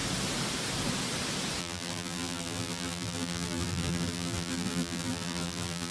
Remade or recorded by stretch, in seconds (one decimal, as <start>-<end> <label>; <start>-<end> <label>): 0.0-1.6 recorded; 1.6-5.9 remade